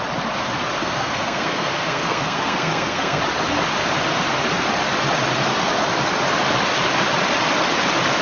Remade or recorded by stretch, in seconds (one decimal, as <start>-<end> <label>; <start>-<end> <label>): 0.0-0.8 recorded; 0.8-3.2 remade; 3.2-8.2 recorded